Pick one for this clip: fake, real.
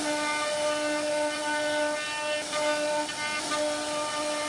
real